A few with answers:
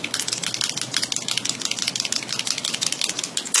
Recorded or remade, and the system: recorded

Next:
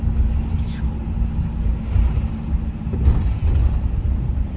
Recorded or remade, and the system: recorded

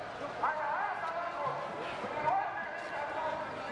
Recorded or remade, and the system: recorded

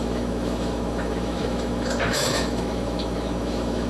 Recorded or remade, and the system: remade, autoencoder, DAC-VAE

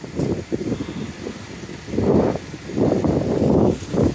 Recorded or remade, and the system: recorded